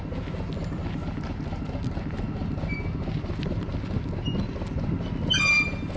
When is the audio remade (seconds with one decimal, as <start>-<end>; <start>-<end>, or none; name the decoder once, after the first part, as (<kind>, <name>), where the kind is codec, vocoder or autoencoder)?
none